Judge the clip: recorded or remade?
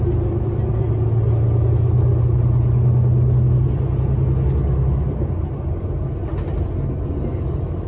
recorded